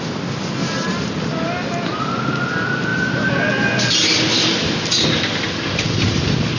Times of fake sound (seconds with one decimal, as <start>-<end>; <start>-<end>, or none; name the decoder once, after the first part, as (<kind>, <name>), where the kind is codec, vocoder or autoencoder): none